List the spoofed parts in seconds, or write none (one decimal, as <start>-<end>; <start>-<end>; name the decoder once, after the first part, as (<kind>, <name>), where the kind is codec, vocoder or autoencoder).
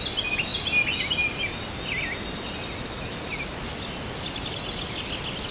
none